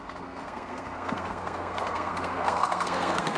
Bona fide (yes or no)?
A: no